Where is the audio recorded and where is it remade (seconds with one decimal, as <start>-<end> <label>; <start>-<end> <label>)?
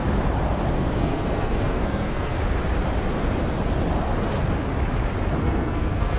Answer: 0.0-0.7 recorded; 0.7-2.4 remade; 2.4-5.4 recorded; 5.4-6.2 remade